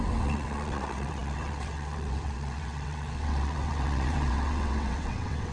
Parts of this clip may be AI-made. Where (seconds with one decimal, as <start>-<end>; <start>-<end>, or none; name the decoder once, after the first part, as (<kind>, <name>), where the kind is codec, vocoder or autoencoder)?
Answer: 0.0-5.5 (vocoder, WaveNeXt)